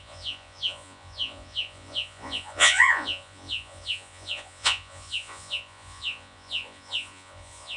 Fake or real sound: fake